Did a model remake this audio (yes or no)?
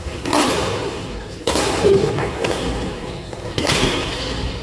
yes